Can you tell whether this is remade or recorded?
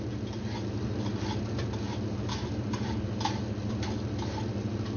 recorded